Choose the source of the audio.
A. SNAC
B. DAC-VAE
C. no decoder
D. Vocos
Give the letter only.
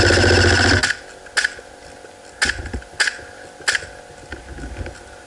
C